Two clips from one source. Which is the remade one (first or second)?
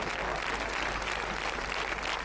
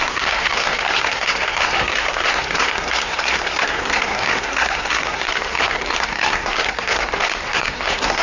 second